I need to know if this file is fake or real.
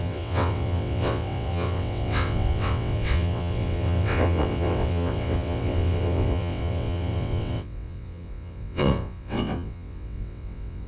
fake